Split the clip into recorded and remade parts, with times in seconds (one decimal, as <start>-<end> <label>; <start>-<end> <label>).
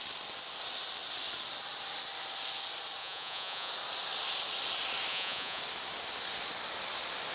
0.0-3.0 recorded; 3.0-3.7 remade; 3.7-5.1 recorded; 5.1-5.6 remade; 5.6-7.3 recorded